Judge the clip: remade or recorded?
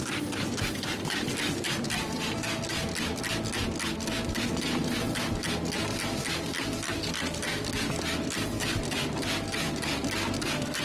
recorded